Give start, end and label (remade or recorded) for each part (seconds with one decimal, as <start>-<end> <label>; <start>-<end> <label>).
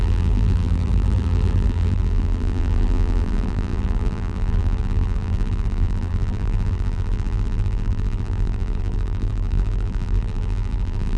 0.0-11.2 remade